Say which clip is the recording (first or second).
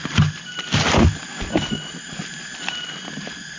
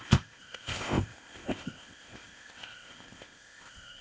first